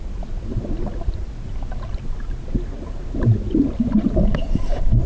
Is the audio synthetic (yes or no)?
no